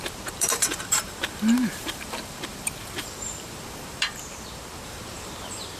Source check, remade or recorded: remade